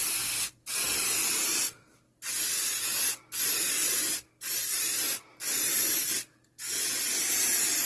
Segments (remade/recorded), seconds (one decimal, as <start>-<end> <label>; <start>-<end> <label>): 0.0-7.9 recorded